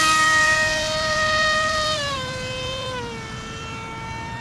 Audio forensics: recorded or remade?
remade